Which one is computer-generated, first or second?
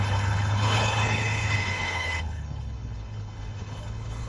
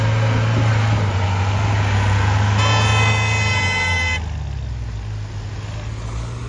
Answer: first